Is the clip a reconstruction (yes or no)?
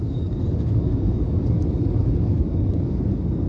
yes